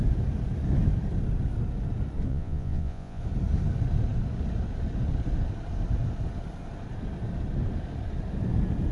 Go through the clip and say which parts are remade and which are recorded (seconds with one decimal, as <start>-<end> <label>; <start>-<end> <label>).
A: 0.0-2.3 recorded; 2.3-3.2 remade; 3.2-8.9 recorded